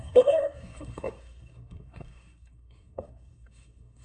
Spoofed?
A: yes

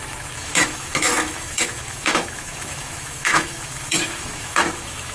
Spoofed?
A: yes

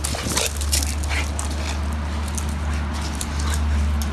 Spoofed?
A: no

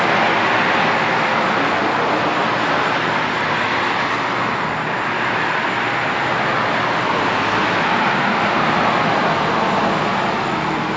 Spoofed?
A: no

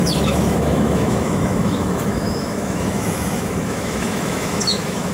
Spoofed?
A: yes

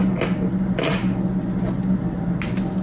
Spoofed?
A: no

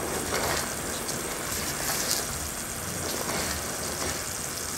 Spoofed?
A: no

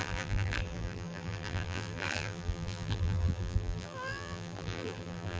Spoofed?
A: yes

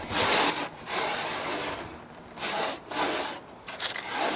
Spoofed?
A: no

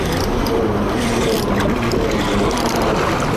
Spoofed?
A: no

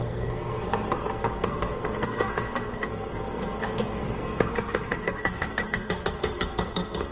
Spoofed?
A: yes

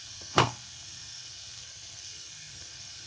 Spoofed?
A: yes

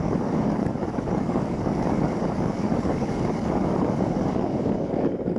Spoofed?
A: yes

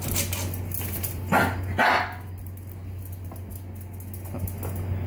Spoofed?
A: no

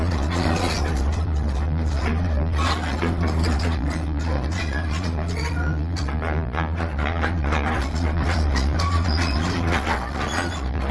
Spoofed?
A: yes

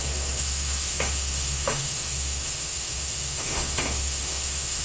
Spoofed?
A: yes